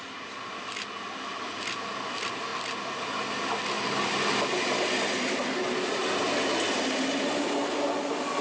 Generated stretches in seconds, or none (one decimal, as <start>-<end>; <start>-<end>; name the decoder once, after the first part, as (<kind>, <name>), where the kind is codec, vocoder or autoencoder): none